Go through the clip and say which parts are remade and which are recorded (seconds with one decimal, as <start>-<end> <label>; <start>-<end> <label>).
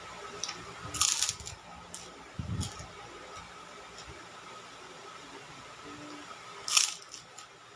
0.0-7.8 recorded